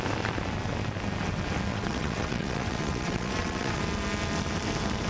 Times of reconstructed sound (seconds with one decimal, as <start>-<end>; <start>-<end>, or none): 1.7-3.8